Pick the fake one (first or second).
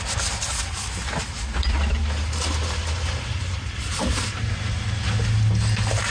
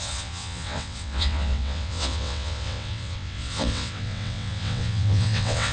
second